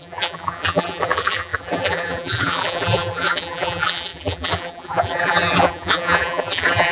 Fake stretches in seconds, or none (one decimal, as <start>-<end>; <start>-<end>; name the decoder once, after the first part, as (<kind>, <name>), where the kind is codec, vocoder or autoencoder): 0.0-6.9 (vocoder, BigVGAN v2)